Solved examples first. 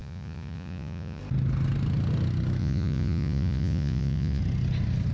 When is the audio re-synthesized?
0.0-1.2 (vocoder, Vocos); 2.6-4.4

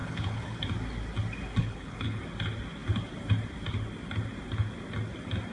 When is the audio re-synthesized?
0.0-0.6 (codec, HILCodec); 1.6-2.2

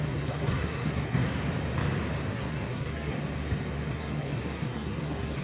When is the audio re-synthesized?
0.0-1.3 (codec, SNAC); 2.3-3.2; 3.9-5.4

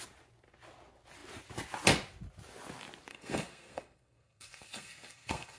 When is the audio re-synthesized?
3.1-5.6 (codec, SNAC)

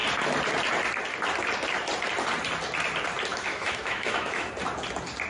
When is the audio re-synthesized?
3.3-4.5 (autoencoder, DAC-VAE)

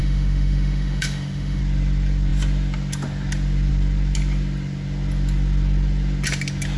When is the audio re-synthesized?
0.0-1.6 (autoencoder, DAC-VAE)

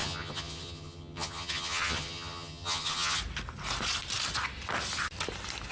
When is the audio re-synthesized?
0.0-3.2 (vocoder, HiFi-GAN)